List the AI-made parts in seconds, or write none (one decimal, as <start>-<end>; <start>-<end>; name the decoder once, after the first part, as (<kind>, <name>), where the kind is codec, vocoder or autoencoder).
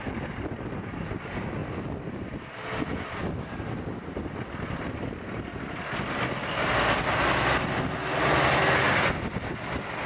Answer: none